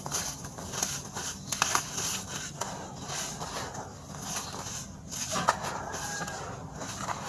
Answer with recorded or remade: recorded